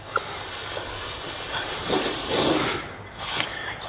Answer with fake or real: real